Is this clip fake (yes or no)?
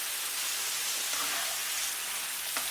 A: no